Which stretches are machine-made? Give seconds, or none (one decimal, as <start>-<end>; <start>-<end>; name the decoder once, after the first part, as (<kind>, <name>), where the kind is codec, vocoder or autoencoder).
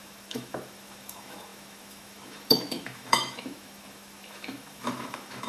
0.0-5.5 (autoencoder, DAC-VAE)